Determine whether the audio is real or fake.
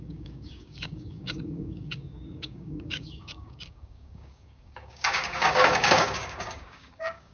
fake